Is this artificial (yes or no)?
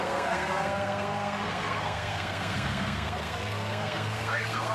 yes